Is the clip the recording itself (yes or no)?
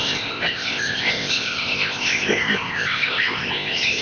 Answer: no